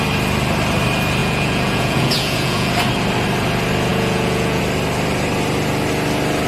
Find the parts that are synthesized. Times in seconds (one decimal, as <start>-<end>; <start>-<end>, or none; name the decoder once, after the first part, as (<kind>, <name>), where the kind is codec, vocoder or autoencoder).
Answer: 1.2-2.7 (vocoder, Vocos); 3.9-4.6